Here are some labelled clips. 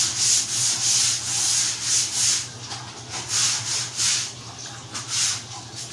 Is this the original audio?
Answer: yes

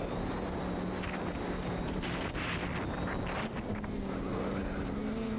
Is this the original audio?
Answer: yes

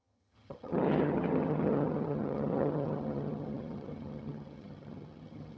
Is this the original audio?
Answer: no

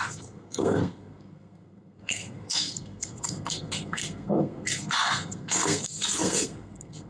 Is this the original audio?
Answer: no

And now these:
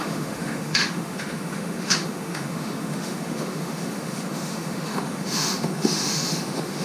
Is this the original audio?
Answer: no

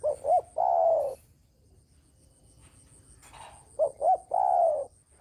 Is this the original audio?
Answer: yes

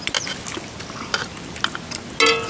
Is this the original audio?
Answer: yes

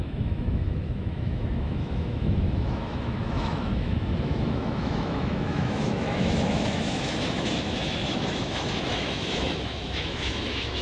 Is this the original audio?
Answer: no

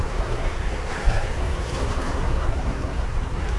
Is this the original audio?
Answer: no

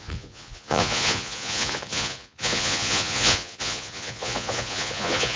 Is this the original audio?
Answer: no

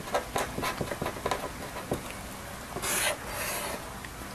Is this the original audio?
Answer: yes